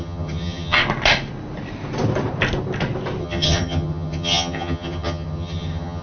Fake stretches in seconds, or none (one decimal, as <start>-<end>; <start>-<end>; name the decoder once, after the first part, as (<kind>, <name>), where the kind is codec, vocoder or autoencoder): 0.0-0.8 (vocoder, HiFi-GAN); 3.2-6.0